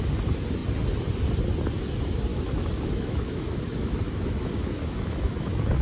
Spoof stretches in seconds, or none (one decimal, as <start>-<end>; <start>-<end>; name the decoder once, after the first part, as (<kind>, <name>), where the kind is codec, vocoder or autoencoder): 2.3-5.8 (autoencoder, DAC-VAE)